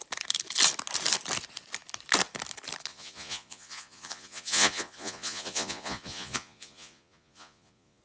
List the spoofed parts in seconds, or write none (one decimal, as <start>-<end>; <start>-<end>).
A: 2.9-8.0